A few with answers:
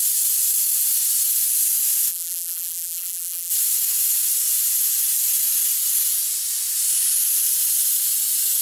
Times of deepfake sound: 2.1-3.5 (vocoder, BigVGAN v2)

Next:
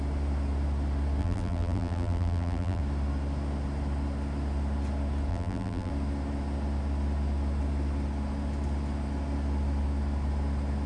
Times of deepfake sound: 1.2-2.8 (vocoder, BigVGAN v2); 5.3-5.9